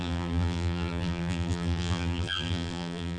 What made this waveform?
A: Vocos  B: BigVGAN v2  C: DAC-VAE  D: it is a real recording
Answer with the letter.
B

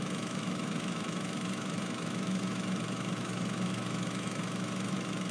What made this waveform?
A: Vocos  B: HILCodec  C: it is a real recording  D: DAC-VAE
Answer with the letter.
D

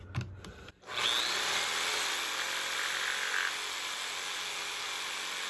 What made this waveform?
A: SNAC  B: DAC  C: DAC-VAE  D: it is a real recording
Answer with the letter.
D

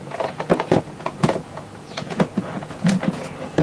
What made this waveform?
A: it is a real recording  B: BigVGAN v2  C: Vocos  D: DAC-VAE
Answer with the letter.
C